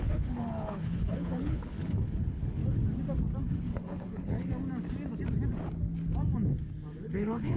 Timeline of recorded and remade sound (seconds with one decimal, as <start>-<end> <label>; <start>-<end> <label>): 0.0-2.6 remade; 2.6-3.4 recorded; 3.4-4.5 remade; 4.5-7.0 recorded; 7.0-7.6 remade